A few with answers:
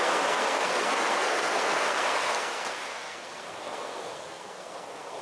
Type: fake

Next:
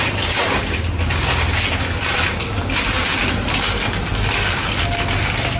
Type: real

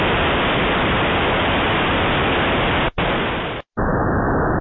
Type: real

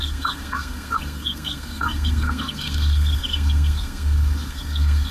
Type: fake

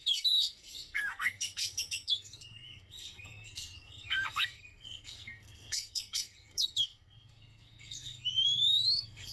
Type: fake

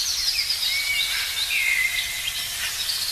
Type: real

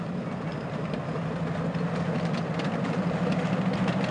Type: real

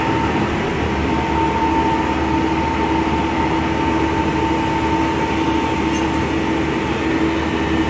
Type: real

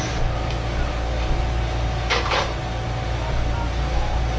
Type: real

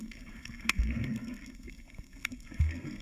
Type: fake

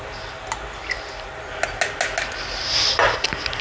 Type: real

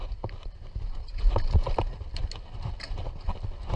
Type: real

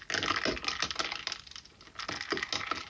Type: real